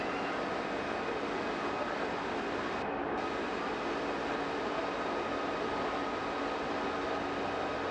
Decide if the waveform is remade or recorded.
recorded